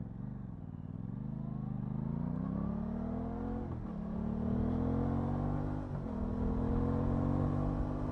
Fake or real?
real